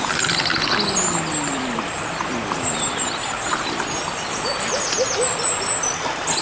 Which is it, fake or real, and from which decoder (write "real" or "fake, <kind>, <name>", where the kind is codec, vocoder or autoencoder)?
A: real